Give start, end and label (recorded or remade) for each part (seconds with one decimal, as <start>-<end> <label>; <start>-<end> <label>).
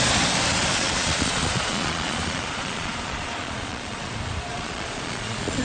0.0-0.7 recorded; 0.7-4.1 remade; 4.1-4.5 recorded; 4.5-5.6 remade